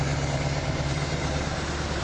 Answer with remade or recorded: remade